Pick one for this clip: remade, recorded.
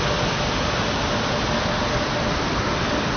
recorded